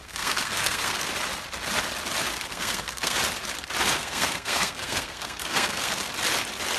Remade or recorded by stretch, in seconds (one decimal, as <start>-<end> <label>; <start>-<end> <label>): 0.0-1.1 remade; 1.1-2.5 recorded; 2.5-3.2 remade; 3.2-4.0 recorded; 4.0-6.1 remade; 6.1-6.8 recorded